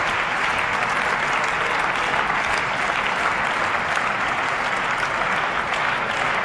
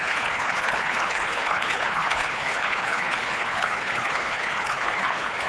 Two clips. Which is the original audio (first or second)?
first